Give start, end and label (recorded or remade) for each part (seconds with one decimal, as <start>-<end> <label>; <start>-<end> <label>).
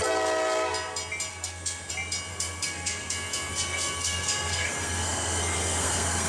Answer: 0.0-1.3 recorded; 1.3-1.9 remade; 1.9-2.3 recorded; 2.3-6.3 remade